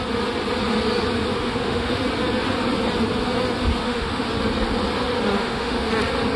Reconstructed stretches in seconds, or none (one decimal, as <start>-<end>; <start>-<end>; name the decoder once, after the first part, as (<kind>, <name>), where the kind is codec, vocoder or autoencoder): 1.3-2.0 (autoencoder, DAC-VAE); 3.8-4.3; 5.4-5.9